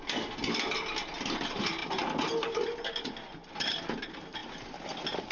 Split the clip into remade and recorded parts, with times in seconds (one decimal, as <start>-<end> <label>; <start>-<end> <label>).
0.0-5.3 recorded

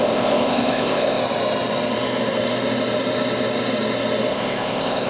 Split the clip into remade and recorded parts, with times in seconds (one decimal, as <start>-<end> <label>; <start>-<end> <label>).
0.0-1.2 remade; 1.2-4.3 recorded; 4.3-5.1 remade

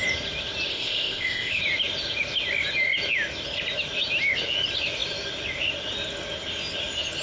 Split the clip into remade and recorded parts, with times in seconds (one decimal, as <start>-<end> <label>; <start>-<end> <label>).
0.0-0.7 recorded; 0.7-1.6 remade; 1.6-7.2 recorded

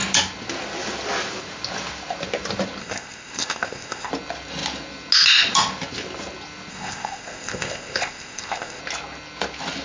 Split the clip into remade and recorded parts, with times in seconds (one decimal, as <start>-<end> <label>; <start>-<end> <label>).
0.0-2.8 recorded; 2.8-4.1 remade; 4.1-6.7 recorded; 6.7-8.8 remade; 8.8-9.8 recorded

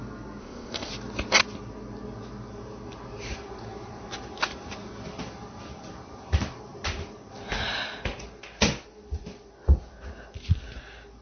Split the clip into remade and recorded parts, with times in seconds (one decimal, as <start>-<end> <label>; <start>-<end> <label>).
0.0-0.4 recorded; 0.4-0.9 remade; 0.9-11.2 recorded

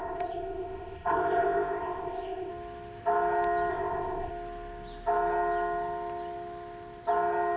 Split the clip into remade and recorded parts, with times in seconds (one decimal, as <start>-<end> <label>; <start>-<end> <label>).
0.0-2.5 remade; 2.5-3.7 recorded; 3.7-4.3 remade; 4.3-7.6 recorded

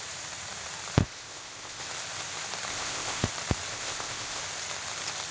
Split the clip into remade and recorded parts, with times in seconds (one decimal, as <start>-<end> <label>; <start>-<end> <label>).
0.0-1.0 recorded; 1.0-1.8 remade; 1.8-2.7 recorded; 2.7-3.3 remade; 3.3-3.7 recorded; 3.7-4.4 remade; 4.4-5.3 recorded

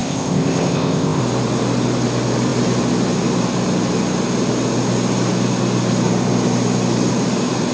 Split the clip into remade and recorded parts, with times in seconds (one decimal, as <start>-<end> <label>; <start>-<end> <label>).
0.0-1.2 remade; 1.2-7.7 recorded